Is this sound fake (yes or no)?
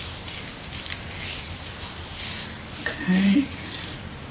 no